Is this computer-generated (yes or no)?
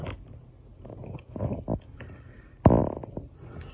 no